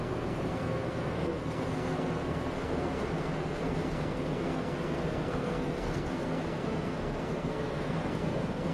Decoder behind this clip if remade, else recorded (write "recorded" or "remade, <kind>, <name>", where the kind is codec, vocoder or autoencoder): remade, codec, SNAC